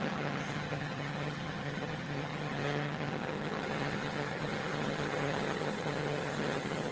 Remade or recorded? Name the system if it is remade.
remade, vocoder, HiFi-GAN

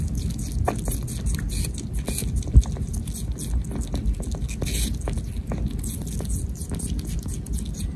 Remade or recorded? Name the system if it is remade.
recorded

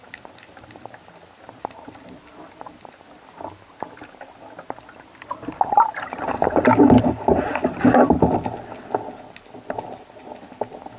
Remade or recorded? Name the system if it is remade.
recorded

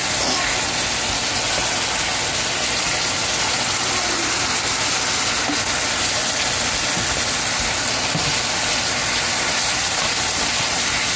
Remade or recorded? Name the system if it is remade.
recorded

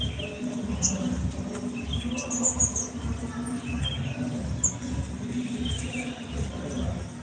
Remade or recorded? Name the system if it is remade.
recorded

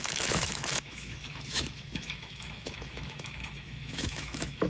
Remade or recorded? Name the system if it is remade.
remade, autoencoder, DAC-VAE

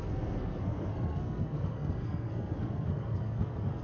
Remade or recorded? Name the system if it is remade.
remade, codec, SNAC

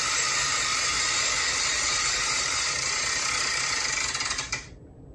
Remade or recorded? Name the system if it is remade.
remade, vocoder, BigVGAN v2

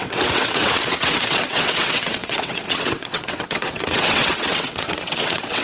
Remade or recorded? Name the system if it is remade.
remade, vocoder, WaveNeXt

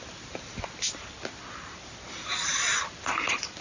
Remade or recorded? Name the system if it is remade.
recorded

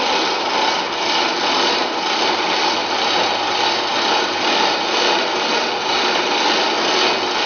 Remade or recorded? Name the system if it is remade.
recorded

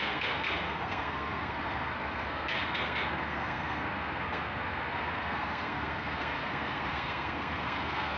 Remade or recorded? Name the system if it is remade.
remade, codec, SNAC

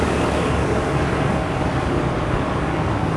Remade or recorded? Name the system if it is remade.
remade, codec, DAC